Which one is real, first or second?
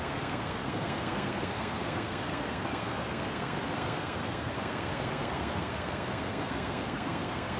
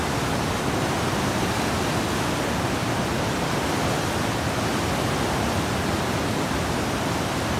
second